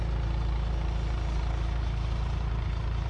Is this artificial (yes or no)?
no